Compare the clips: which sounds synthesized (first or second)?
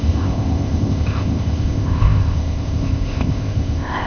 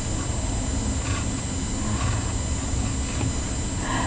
first